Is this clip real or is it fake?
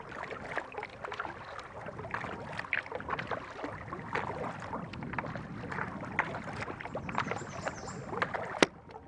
real